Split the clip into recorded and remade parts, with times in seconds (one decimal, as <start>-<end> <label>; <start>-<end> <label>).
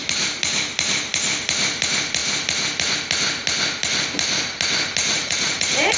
0.0-5.0 recorded; 5.0-6.0 remade